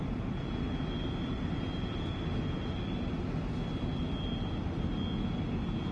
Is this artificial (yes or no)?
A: no